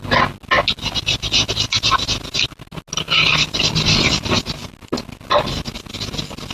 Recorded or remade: recorded